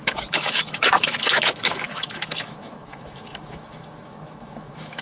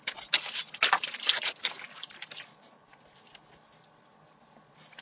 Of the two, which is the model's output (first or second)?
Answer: first